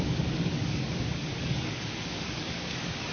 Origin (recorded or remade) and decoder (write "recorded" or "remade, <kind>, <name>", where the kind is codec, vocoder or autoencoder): remade, codec, DAC